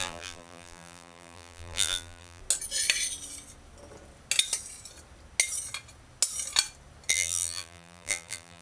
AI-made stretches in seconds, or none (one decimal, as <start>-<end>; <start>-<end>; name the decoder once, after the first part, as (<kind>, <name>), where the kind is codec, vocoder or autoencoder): 0.0-2.4 (vocoder, BigVGAN v2); 7.1-8.6